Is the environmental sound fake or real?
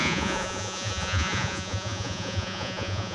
fake